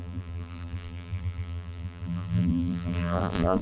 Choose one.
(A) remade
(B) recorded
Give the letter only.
A